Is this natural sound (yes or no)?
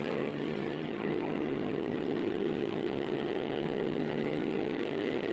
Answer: no